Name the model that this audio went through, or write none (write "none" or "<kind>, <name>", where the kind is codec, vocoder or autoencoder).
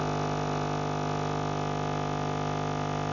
none